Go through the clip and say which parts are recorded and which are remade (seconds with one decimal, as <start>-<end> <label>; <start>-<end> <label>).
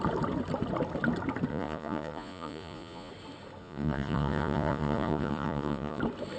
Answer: 0.0-1.5 recorded; 1.5-3.1 remade; 3.1-3.6 recorded; 3.6-6.0 remade; 6.0-6.4 recorded